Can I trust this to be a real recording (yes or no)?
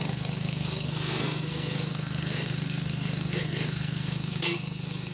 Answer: no